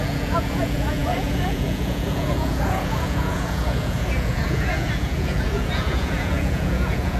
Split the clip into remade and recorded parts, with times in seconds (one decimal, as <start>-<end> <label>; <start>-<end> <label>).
0.0-7.2 remade